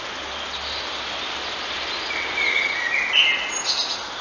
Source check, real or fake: real